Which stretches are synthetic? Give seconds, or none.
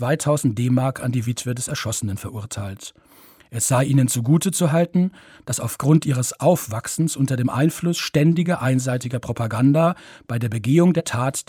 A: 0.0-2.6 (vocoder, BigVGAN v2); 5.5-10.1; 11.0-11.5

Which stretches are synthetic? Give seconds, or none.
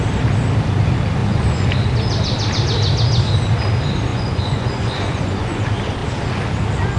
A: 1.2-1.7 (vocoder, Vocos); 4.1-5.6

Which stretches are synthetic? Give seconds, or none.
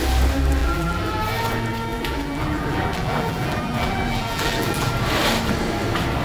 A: 0.6-1.2 (vocoder, BigVGAN v2); 1.9-4.9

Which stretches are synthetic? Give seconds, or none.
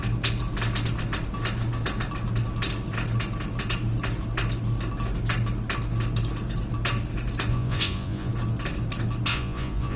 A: 7.5-8.3 (vocoder, Vocos); 9.3-10.0